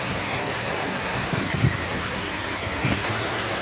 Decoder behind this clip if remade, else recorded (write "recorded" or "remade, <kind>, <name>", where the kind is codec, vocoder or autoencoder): remade, codec, SNAC